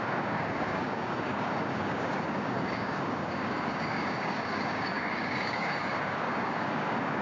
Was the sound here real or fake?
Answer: fake